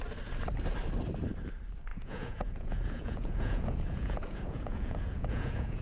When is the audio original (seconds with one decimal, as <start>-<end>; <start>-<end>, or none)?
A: 0.0-1.9